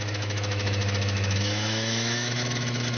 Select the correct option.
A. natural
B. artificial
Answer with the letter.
B